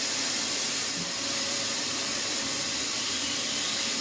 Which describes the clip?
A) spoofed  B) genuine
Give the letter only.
A